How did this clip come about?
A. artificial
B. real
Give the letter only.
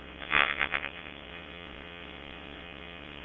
A